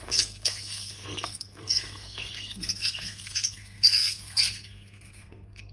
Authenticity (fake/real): fake